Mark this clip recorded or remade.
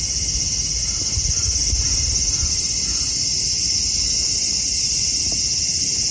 recorded